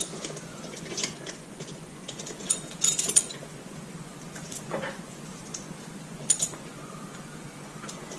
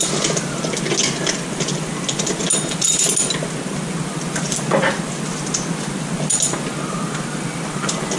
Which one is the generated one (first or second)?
first